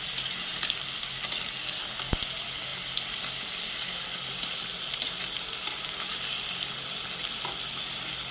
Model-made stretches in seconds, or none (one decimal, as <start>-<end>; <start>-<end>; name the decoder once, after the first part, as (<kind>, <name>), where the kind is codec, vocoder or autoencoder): none